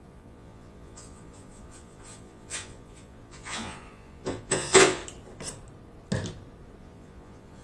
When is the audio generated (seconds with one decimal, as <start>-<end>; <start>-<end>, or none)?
0.0-5.0; 6.8-7.6